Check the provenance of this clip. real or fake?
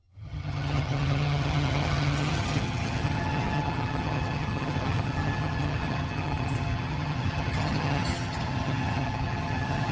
fake